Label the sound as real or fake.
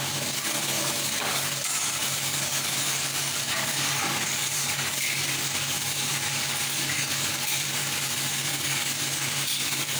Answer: fake